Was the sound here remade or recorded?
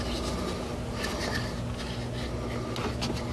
recorded